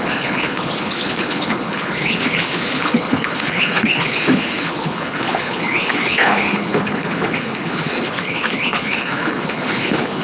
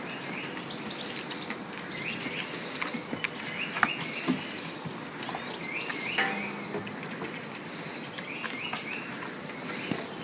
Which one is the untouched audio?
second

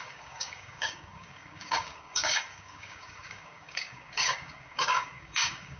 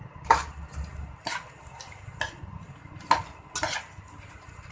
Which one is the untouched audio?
second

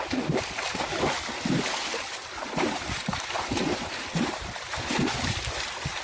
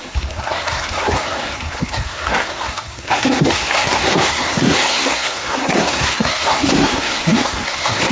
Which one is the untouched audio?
first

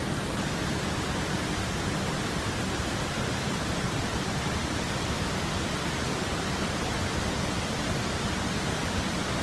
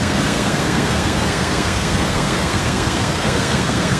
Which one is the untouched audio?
first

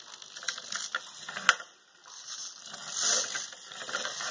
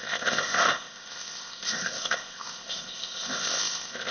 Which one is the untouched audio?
first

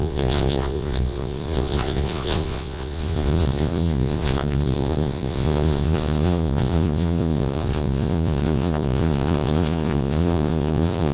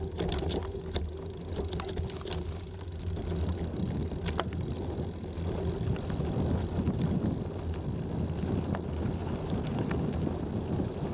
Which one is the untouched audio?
second